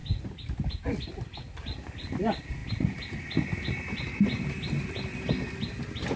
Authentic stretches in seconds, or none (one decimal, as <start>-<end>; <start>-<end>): 0.0-6.2